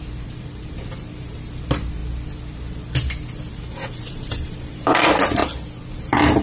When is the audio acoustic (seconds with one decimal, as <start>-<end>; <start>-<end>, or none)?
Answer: 2.0-3.5; 5.4-5.9